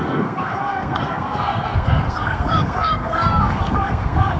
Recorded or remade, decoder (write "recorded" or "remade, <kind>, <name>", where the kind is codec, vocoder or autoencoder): remade, codec, SNAC